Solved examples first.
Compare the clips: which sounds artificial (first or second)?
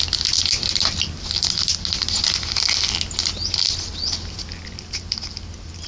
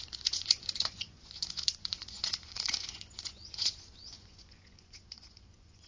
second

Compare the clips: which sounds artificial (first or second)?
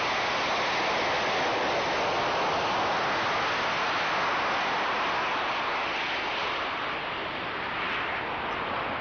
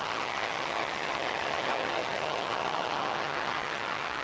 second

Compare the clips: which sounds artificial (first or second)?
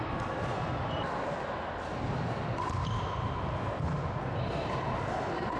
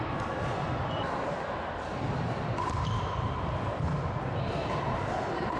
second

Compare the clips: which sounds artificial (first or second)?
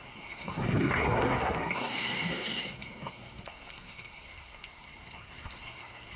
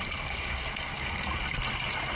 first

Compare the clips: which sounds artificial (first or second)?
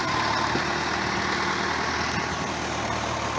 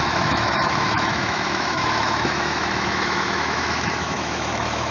second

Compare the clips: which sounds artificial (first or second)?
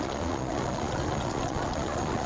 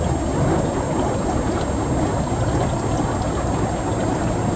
first